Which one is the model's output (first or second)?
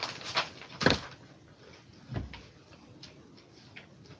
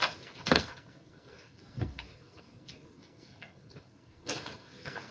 second